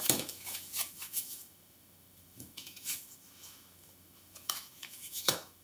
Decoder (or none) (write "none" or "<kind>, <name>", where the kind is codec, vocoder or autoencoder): autoencoder, DAC-VAE